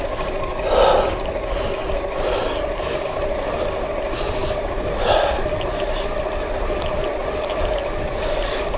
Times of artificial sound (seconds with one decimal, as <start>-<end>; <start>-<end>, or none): none